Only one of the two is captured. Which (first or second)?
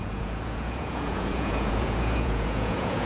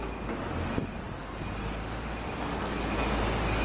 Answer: second